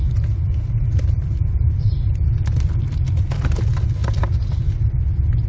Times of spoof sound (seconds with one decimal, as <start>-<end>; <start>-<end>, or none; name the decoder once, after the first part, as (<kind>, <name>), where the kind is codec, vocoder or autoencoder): none